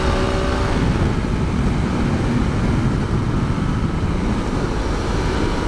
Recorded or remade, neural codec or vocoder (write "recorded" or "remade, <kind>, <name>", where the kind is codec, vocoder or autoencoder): recorded